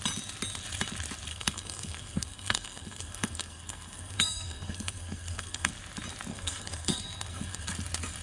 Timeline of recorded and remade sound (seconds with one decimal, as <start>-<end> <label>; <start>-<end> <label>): 0.0-1.3 recorded; 1.3-5.7 remade; 5.7-6.3 recorded; 6.3-7.7 remade; 7.7-8.2 recorded